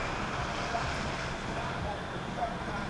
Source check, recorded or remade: recorded